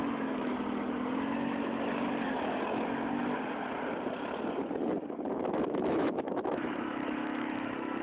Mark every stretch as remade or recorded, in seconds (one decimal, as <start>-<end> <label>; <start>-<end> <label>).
0.0-0.5 remade; 0.5-5.3 recorded; 5.3-8.0 remade